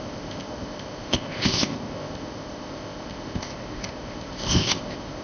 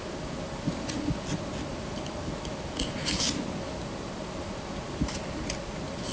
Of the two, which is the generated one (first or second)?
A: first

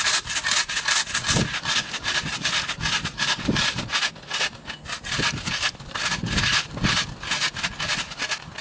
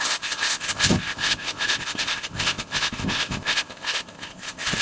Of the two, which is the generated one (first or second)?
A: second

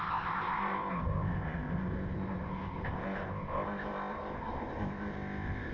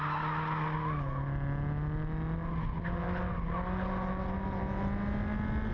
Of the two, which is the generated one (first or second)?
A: first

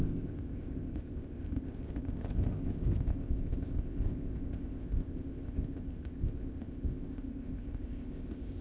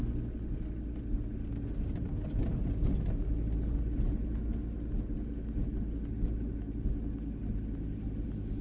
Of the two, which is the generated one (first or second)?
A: first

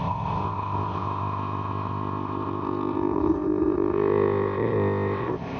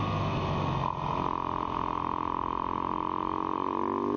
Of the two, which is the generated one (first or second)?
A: first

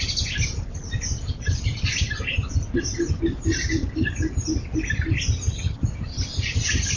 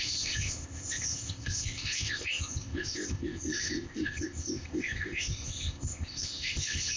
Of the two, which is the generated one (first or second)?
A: second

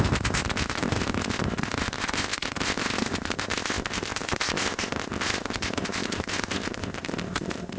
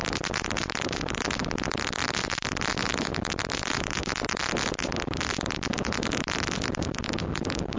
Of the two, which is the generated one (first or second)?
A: first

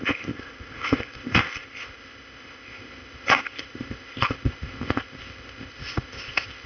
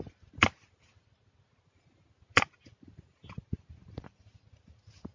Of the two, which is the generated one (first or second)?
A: first